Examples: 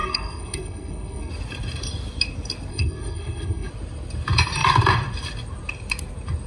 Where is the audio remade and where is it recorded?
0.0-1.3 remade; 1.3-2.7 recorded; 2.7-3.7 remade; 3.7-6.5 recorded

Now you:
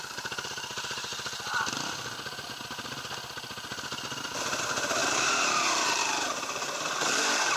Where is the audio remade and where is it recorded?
0.0-1.1 remade; 1.1-4.6 recorded; 4.6-7.6 remade

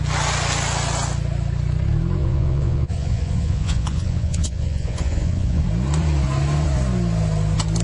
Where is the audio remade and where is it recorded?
0.0-2.2 recorded; 2.2-5.6 remade; 5.6-7.8 recorded

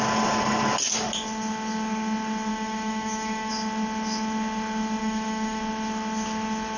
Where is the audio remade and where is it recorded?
0.0-2.5 recorded; 2.5-3.5 remade; 3.5-5.0 recorded; 5.0-5.6 remade; 5.6-6.8 recorded

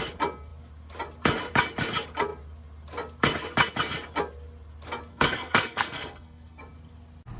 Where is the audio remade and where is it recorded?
0.0-5.1 recorded; 5.1-6.6 remade; 6.6-7.4 recorded

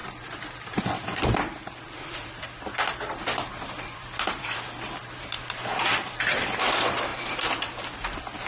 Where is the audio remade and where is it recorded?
0.0-8.5 remade

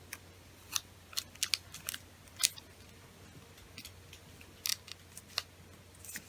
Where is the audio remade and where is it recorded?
0.0-6.3 recorded